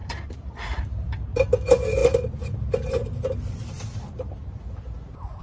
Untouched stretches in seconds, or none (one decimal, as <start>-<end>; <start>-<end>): 0.8-5.4